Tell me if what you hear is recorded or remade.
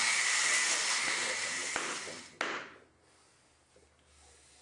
recorded